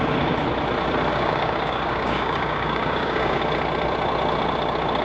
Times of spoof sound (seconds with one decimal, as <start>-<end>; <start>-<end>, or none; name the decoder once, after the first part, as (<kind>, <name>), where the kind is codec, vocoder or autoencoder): 1.1-3.4 (codec, DAC)